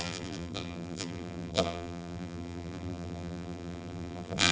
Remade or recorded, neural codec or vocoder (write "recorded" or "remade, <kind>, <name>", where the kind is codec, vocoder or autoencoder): remade, vocoder, BigVGAN v2